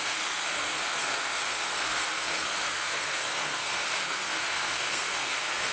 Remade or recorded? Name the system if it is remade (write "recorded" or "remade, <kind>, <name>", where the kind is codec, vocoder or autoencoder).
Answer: remade, codec, SNAC